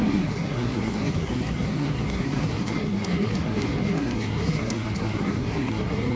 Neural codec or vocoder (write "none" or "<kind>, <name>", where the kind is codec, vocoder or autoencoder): codec, SNAC